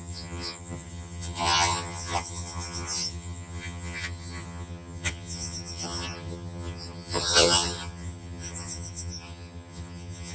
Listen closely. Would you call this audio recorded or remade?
remade